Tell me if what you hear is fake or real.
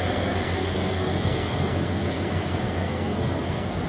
fake